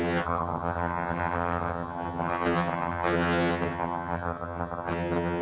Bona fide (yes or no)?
no